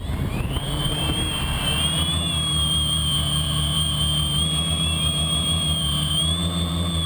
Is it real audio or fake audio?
fake